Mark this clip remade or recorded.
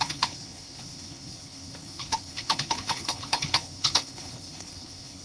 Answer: remade